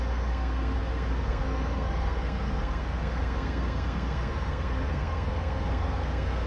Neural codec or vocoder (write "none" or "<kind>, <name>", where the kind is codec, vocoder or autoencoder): codec, SNAC